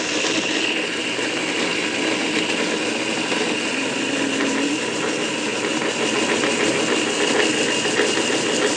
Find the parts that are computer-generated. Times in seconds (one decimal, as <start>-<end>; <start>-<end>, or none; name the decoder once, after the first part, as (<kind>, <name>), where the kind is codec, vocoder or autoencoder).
none